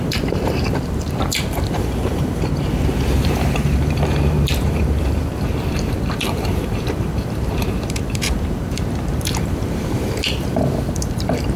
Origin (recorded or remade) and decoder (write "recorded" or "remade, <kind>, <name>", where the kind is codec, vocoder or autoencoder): remade, vocoder, BigVGAN v2